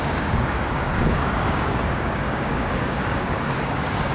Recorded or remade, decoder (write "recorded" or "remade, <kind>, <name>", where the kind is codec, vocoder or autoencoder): remade, codec, DAC